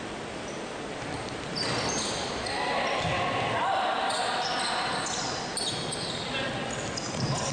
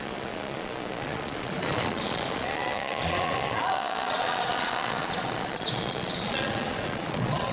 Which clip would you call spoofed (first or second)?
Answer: second